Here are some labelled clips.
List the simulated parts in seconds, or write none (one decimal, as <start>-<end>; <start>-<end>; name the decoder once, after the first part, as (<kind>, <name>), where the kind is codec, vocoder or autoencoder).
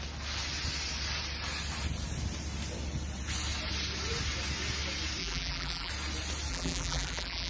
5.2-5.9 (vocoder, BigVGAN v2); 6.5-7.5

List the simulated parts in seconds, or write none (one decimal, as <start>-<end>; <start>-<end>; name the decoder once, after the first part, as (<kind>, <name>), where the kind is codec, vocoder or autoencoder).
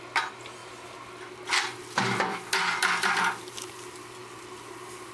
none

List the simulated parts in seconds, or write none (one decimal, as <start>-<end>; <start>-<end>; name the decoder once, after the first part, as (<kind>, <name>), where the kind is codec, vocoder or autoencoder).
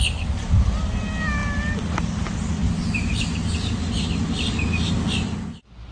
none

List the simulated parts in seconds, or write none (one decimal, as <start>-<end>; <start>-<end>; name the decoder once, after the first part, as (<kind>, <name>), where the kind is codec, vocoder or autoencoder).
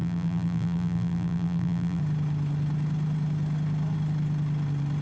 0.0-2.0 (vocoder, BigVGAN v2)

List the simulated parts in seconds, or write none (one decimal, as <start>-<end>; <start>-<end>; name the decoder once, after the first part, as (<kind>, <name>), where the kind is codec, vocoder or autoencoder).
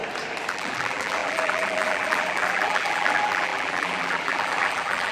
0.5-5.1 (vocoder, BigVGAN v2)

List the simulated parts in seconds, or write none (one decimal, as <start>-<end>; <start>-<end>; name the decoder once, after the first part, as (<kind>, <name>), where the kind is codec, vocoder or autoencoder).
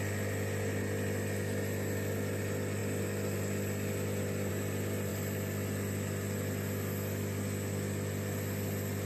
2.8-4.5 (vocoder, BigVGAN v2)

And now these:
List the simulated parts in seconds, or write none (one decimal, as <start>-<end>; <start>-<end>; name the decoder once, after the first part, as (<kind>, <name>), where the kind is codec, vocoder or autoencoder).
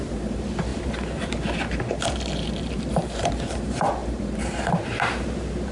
0.0-5.7 (vocoder, BigVGAN v2)